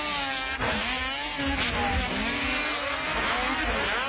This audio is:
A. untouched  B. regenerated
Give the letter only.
A